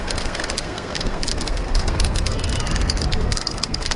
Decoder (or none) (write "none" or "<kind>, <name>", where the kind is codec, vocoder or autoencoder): codec, SNAC